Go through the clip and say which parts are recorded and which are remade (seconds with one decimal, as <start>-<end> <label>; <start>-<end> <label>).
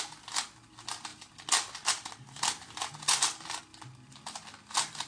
0.0-5.1 recorded